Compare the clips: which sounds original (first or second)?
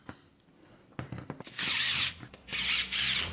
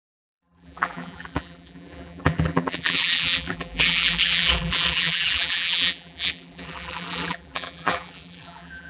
first